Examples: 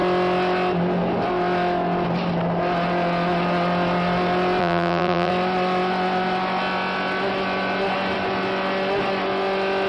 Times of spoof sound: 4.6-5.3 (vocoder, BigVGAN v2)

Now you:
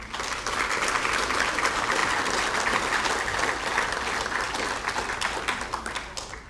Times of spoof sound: none

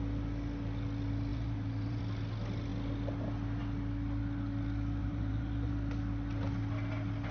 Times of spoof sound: 1.3-2.0 (vocoder, BigVGAN v2); 5.0-5.7